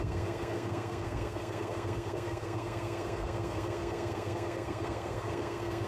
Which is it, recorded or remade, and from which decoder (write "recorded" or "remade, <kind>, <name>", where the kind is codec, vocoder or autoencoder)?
remade, codec, SNAC